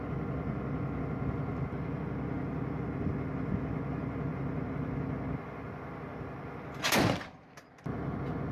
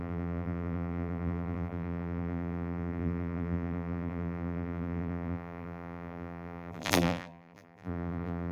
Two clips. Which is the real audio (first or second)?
first